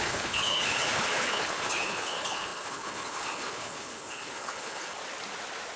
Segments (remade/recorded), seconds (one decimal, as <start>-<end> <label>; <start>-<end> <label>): 0.0-5.0 remade; 5.0-5.8 recorded